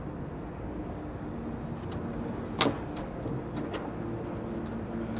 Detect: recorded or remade recorded